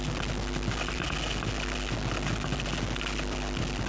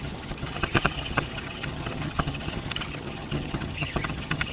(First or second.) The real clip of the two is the first